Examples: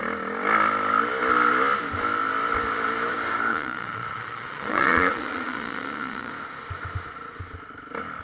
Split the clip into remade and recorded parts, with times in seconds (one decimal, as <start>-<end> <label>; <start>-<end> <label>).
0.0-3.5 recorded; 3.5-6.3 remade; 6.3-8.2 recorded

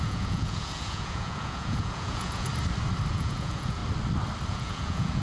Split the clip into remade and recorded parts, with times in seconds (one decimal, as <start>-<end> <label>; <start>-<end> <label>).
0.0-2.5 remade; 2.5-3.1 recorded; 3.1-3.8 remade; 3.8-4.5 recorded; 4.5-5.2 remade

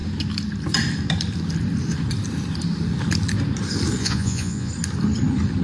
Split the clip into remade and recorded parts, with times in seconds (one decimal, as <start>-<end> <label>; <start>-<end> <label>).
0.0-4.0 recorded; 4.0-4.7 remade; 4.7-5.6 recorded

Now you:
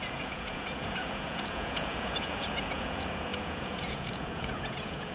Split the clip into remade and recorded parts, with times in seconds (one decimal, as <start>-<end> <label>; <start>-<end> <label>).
0.0-5.1 remade

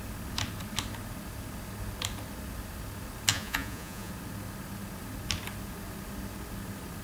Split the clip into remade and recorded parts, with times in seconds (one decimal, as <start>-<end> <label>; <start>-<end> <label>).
0.0-3.3 recorded; 3.3-4.1 remade; 4.1-7.0 recorded

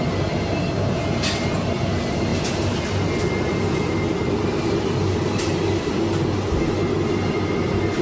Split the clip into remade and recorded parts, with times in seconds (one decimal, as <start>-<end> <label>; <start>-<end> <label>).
0.0-8.0 recorded